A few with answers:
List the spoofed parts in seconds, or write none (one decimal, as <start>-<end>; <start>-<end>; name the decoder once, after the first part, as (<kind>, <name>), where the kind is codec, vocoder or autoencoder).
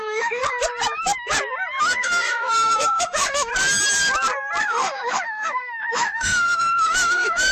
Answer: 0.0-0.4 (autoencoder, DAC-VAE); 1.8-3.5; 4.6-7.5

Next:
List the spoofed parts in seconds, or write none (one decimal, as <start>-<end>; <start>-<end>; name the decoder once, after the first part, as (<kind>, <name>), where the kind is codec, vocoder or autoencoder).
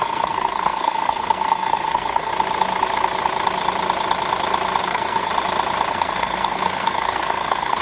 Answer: 0.0-2.3 (codec, SNAC); 4.8-5.3; 5.9-7.8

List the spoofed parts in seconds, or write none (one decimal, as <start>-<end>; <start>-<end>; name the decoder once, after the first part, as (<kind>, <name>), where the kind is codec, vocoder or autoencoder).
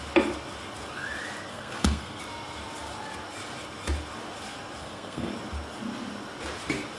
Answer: 1.5-2.2 (codec, SNAC); 4.8-5.3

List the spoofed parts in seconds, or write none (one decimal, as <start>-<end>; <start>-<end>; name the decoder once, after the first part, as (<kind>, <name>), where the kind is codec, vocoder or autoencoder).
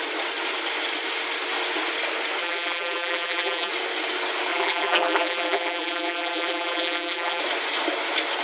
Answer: 2.4-3.7 (vocoder, BigVGAN v2); 4.5-7.4